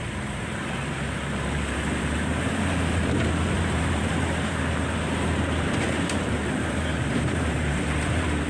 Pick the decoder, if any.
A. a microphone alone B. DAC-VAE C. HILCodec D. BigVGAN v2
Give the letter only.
D